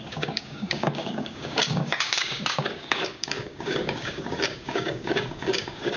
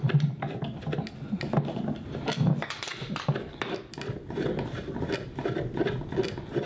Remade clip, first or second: first